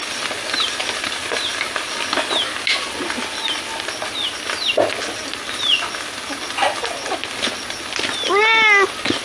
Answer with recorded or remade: recorded